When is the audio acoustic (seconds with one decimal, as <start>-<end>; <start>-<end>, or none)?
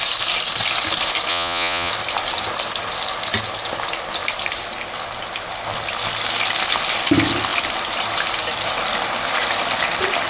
0.0-1.3; 1.9-10.3